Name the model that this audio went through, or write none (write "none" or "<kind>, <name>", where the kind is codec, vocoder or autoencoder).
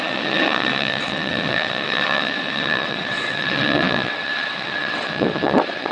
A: vocoder, WaveNeXt